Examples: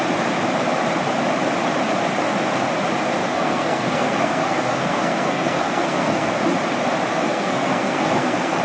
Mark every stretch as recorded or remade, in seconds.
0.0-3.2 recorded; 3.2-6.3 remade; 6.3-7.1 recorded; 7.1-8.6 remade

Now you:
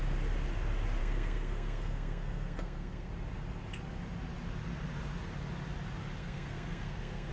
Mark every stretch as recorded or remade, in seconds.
0.0-1.0 recorded; 1.0-3.1 remade; 3.1-6.2 recorded; 6.2-7.3 remade